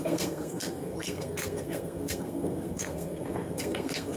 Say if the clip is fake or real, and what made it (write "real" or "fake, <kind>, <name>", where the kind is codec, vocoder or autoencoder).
fake, codec, SNAC